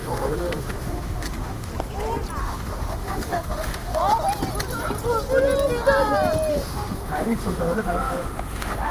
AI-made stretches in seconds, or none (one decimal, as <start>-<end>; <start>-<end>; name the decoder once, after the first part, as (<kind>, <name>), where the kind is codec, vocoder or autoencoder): 0.0-1.7 (autoencoder, DAC-VAE); 2.4-4.0; 6.5-8.9